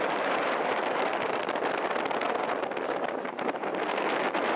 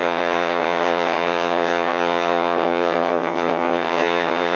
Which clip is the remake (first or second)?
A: second